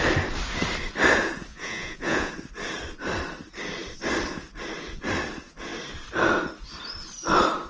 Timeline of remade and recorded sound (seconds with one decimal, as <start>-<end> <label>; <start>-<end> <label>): 0.0-1.5 recorded; 1.5-2.3 remade; 2.3-7.7 recorded